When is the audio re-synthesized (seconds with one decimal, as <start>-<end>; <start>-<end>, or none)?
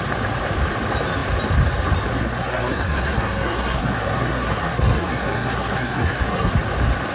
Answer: 2.2-6.5